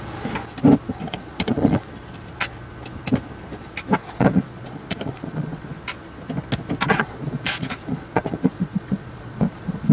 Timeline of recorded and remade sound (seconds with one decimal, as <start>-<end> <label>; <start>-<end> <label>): 0.0-1.0 recorded; 1.0-1.9 remade; 1.9-4.0 recorded; 4.0-5.7 remade; 5.7-6.9 recorded; 6.9-9.9 remade